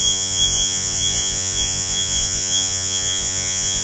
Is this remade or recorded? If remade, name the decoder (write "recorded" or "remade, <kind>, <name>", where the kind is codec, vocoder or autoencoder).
remade, vocoder, Vocos